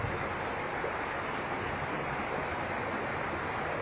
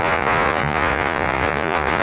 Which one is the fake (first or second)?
second